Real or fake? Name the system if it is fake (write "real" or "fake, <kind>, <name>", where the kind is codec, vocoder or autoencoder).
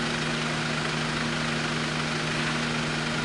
real